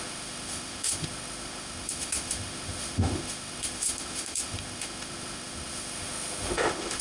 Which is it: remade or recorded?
remade